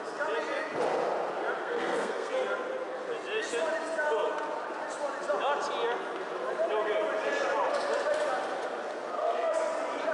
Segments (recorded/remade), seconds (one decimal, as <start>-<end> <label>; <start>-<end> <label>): 0.0-1.6 recorded; 1.6-2.3 remade; 2.3-9.2 recorded; 9.2-9.7 remade; 9.7-10.1 recorded